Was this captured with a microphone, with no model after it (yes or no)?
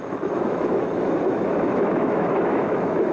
no